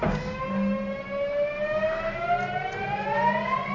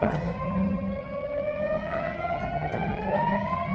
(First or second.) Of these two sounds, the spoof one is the second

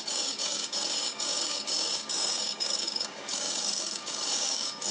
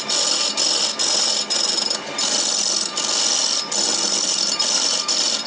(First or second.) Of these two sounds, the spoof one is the first